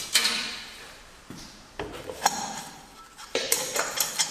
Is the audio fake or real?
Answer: fake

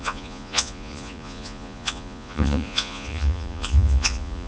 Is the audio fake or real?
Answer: fake